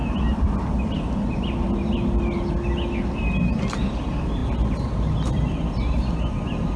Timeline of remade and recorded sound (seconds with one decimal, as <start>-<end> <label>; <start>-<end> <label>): 0.0-6.8 recorded